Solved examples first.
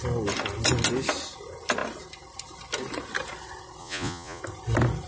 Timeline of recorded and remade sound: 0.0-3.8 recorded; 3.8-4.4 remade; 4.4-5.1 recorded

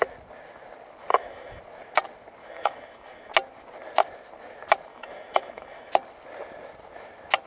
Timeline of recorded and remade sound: 0.0-1.1 recorded; 1.1-1.6 remade; 1.6-2.4 recorded; 2.4-3.3 remade; 3.3-4.9 recorded; 4.9-5.9 remade; 5.9-7.5 recorded

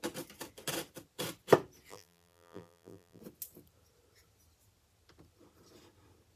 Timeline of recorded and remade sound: 0.0-1.9 recorded; 1.9-3.2 remade; 3.2-6.4 recorded

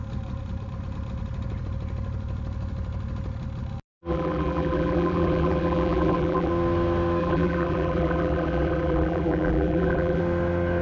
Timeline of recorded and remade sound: 0.0-4.1 recorded; 4.1-6.5 remade; 6.5-7.2 recorded; 7.2-10.2 remade; 10.2-10.8 recorded

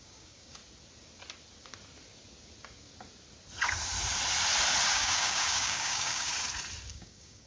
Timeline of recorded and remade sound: 0.0-0.6 remade; 0.6-4.9 recorded; 4.9-6.3 remade; 6.3-6.9 recorded; 6.9-7.5 remade